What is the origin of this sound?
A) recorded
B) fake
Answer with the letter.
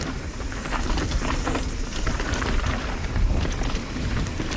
B